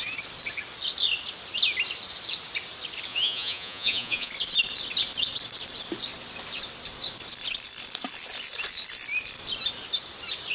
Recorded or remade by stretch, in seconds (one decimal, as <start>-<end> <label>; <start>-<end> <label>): 0.0-3.1 recorded; 3.1-4.3 remade; 4.3-10.5 recorded